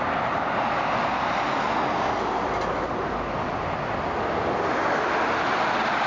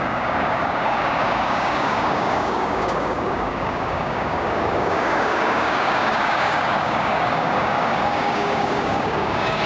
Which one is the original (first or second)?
first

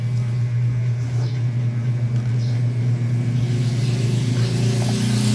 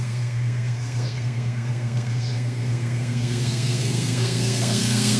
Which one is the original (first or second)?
first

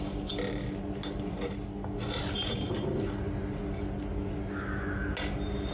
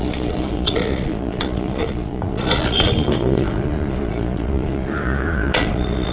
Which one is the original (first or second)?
first